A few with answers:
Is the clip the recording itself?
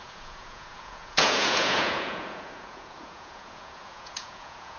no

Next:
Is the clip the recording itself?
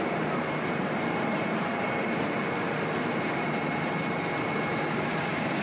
no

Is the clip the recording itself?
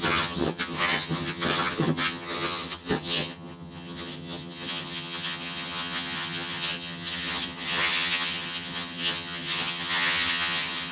no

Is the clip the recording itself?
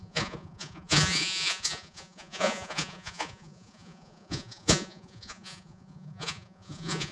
no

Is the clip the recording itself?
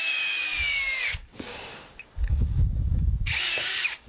no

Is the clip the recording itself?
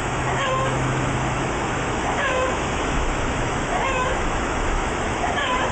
no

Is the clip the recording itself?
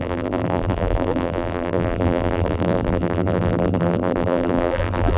no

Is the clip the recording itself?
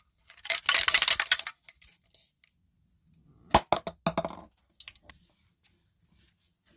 yes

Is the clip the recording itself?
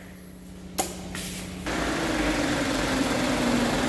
yes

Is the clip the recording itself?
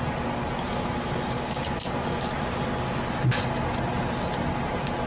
yes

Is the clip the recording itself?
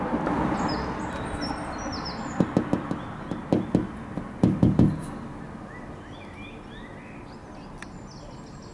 yes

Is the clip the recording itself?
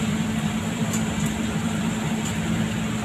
no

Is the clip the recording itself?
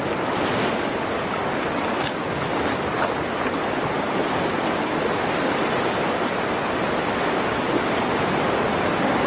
yes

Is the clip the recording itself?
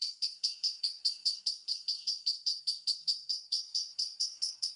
no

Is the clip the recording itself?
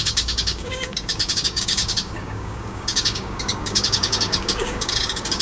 no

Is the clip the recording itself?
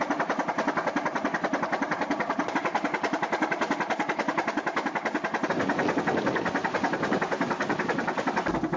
yes